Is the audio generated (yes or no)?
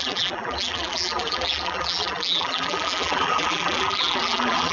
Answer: yes